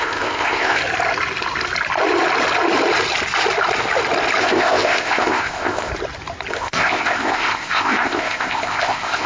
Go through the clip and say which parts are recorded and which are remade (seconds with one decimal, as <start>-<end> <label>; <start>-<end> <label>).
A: 0.0-0.8 remade; 0.8-4.4 recorded; 4.4-5.9 remade; 5.9-6.5 recorded; 6.5-9.3 remade